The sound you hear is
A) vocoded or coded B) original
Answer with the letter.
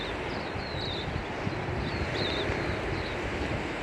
A